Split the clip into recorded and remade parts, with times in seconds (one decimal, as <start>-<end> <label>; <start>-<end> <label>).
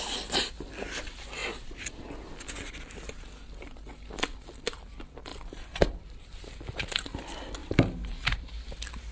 0.0-5.3 recorded; 5.3-6.9 remade; 6.9-7.6 recorded; 7.6-8.4 remade; 8.4-9.1 recorded